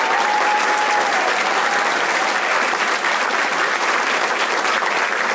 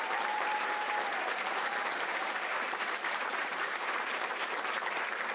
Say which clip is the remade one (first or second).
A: second